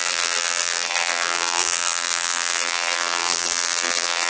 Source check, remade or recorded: remade